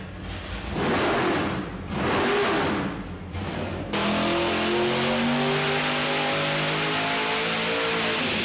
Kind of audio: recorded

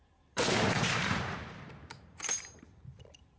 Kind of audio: remade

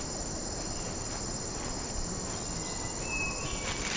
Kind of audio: recorded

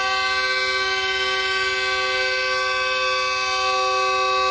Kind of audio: recorded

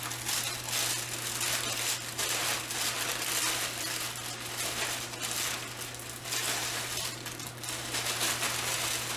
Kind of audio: recorded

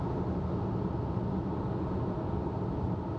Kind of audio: recorded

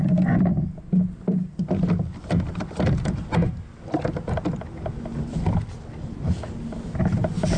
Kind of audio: recorded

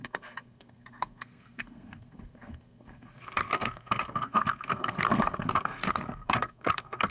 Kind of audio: remade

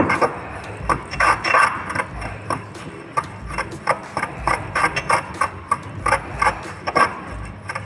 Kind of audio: recorded